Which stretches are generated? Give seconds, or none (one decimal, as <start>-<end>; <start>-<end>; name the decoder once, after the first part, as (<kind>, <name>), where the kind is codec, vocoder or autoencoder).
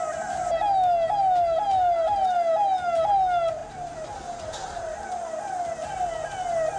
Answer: none